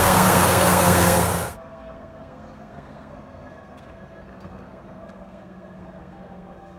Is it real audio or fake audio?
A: fake